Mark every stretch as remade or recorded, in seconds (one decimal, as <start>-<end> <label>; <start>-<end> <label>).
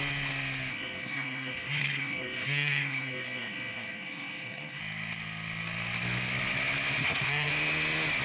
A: 0.0-0.7 recorded; 0.7-4.8 remade; 4.8-7.0 recorded; 7.0-7.5 remade; 7.5-8.2 recorded